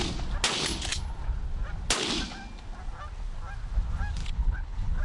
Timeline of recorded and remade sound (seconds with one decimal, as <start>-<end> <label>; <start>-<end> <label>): 0.0-4.2 recorded; 4.2-5.0 remade